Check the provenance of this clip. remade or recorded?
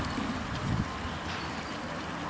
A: recorded